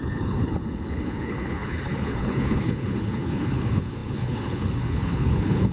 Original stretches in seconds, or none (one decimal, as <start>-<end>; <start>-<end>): none